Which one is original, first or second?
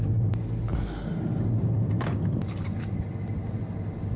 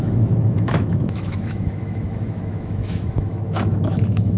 first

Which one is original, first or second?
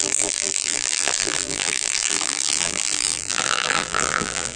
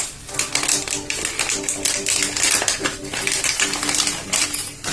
second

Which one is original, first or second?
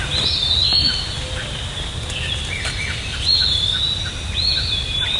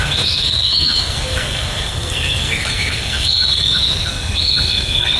first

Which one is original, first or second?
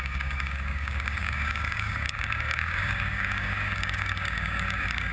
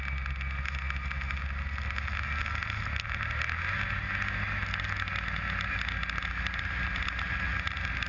second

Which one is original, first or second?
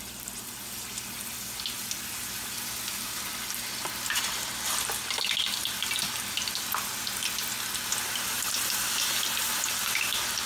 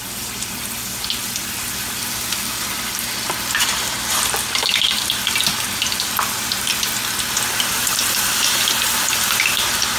first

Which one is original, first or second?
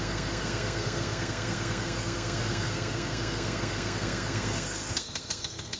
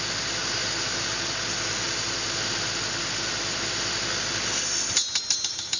second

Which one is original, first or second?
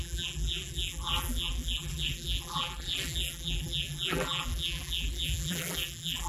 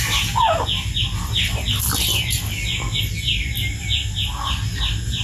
second